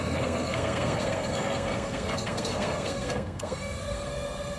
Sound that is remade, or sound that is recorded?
remade